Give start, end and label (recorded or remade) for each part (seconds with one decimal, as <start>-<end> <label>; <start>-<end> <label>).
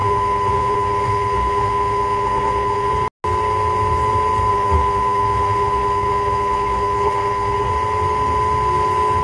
0.0-2.9 remade; 2.9-4.5 recorded; 4.5-7.7 remade; 7.7-9.2 recorded